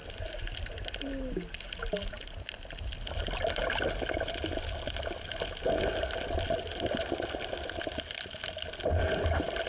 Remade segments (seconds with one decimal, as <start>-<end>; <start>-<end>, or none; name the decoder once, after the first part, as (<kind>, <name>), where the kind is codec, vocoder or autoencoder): none